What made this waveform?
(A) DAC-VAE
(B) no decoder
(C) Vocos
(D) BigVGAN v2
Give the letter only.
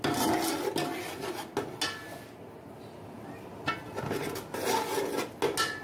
B